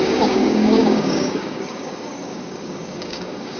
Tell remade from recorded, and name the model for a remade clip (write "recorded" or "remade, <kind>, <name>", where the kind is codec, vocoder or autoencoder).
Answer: remade, codec, DAC